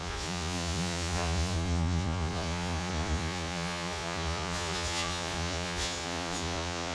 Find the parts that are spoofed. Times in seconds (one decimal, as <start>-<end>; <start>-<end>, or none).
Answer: 0.0-6.9

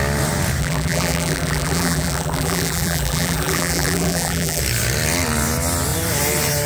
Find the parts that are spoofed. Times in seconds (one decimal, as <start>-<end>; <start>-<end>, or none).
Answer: 0.6-4.6

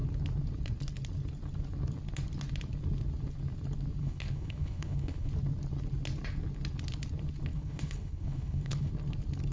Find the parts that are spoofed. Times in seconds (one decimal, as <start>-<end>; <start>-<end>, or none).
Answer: 4.0-5.3; 7.5-8.9

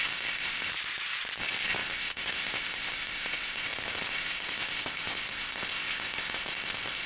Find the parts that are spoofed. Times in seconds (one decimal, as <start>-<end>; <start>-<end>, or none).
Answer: 0.0-0.7; 1.4-7.1